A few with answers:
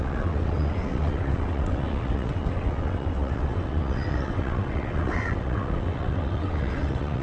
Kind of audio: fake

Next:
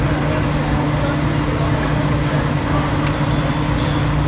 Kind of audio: real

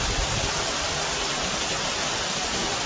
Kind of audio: fake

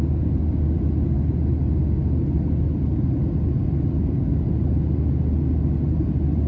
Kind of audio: real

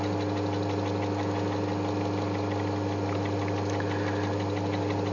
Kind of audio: real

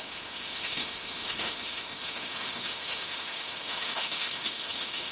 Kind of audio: fake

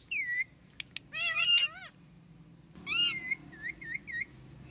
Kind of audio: real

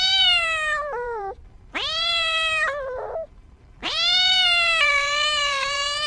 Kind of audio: fake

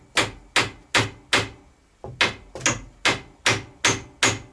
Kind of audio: real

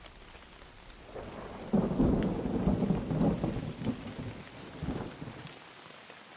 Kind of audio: real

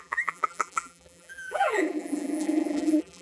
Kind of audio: fake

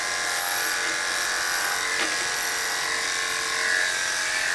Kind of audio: real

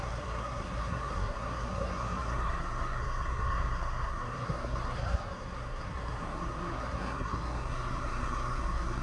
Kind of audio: fake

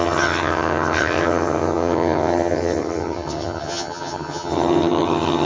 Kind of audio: fake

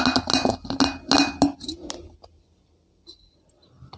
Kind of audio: real